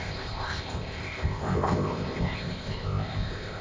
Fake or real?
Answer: fake